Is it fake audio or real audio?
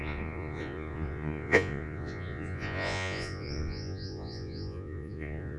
fake